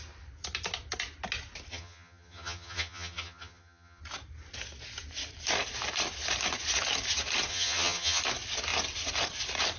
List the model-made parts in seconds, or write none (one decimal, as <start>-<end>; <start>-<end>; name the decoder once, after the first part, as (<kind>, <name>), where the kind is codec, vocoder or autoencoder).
1.7-4.0 (vocoder, HiFi-GAN); 7.5-8.2